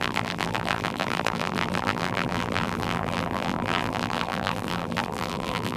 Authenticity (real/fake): fake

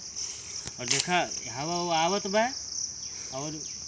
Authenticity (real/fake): real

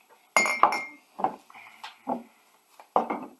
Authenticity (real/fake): real